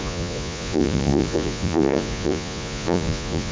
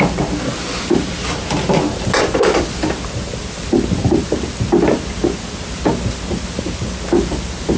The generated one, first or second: first